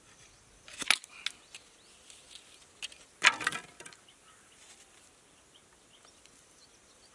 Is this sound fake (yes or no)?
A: no